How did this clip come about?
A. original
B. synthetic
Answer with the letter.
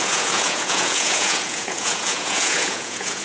B